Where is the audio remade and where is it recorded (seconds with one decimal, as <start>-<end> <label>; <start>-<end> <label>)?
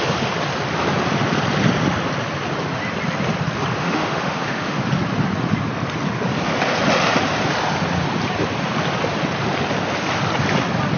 0.0-3.8 recorded; 3.8-4.8 remade; 4.8-11.0 recorded